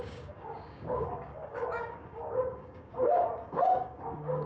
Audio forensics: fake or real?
fake